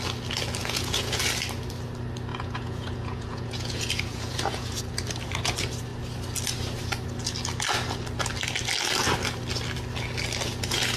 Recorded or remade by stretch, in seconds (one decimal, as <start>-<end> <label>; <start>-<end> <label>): 0.0-0.6 recorded; 0.6-1.2 remade; 1.2-2.3 recorded; 2.3-4.8 remade; 4.8-11.0 recorded

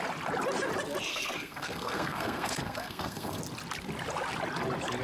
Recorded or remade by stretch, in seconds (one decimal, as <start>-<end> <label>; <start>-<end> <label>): 0.0-1.1 recorded; 1.1-3.4 remade; 3.4-5.0 recorded

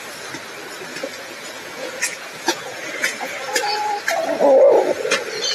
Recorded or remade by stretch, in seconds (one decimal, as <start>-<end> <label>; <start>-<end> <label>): 0.0-0.9 recorded; 0.9-3.3 remade; 3.3-5.5 recorded

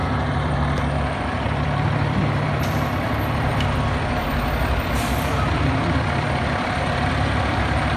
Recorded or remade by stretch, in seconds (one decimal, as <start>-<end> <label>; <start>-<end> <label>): 0.0-8.0 remade

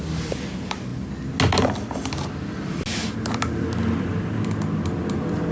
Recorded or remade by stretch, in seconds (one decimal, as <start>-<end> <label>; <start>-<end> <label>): 0.0-5.5 recorded

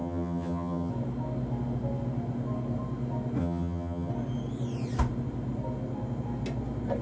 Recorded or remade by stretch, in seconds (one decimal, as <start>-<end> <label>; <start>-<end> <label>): 0.0-0.9 remade; 0.9-3.4 recorded; 3.4-4.1 remade; 4.1-7.0 recorded

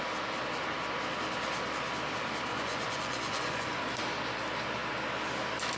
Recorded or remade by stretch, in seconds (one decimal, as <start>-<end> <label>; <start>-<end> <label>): 0.0-2.5 recorded; 2.5-3.8 remade; 3.8-5.8 recorded

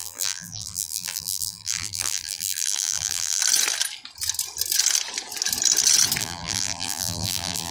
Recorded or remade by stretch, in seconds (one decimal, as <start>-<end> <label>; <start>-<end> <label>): 0.0-3.4 remade; 3.4-6.2 recorded; 6.2-7.7 remade